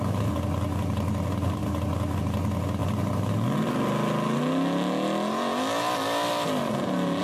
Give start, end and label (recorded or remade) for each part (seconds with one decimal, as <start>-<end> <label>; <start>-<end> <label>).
0.0-7.2 recorded